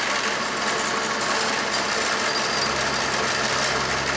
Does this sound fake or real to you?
real